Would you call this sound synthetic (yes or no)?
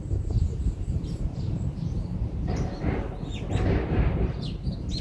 yes